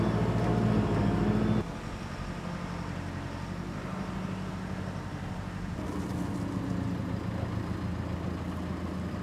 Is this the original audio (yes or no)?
yes